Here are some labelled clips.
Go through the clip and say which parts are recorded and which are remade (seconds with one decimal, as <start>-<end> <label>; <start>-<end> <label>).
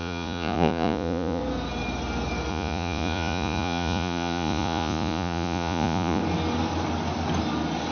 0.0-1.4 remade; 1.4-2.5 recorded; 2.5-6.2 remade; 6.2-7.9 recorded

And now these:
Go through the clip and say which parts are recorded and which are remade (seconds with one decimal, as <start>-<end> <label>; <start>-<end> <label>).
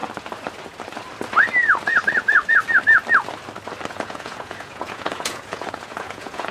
0.0-3.9 recorded; 3.9-6.5 remade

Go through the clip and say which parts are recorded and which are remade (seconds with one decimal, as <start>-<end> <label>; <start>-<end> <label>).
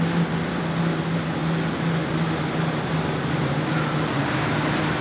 0.0-5.0 recorded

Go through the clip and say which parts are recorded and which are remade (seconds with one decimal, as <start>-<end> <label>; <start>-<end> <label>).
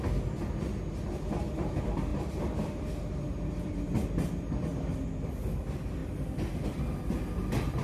0.0-2.1 recorded; 2.1-3.8 remade; 3.8-7.8 recorded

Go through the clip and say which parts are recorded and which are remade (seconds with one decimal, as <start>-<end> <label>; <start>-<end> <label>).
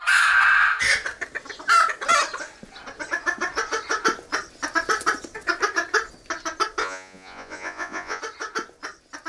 0.0-6.8 recorded; 6.8-8.2 remade; 8.2-9.3 recorded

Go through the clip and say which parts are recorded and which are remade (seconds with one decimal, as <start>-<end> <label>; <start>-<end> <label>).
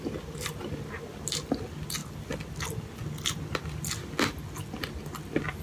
0.0-5.6 recorded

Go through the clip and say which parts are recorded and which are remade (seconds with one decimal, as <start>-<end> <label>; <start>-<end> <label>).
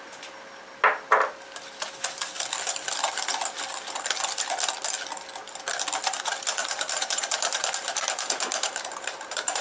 0.0-6.6 recorded; 6.6-9.6 remade